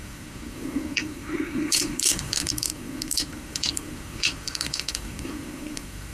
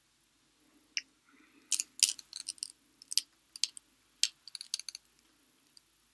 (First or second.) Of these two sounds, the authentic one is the second